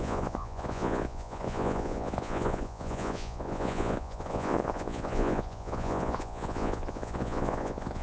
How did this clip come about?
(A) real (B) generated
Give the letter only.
B